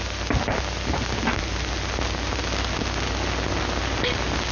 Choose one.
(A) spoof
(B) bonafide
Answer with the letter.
B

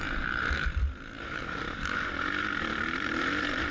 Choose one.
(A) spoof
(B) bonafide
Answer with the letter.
A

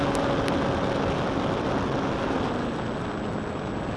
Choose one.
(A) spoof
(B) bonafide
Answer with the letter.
B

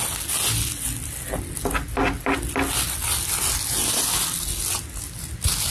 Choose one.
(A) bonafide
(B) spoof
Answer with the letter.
A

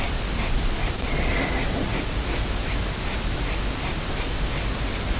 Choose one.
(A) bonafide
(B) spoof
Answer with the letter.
A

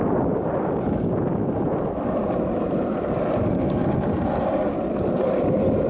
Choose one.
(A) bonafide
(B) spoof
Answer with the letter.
A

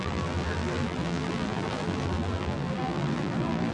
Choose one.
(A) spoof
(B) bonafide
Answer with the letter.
A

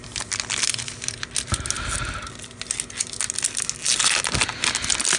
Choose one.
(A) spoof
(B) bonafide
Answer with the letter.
B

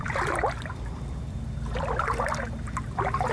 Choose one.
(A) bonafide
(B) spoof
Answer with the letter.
B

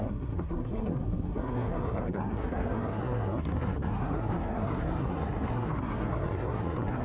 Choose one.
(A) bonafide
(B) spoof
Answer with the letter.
B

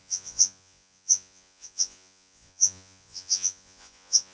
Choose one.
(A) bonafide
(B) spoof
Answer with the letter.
B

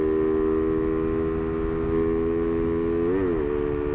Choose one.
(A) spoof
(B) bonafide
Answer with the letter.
B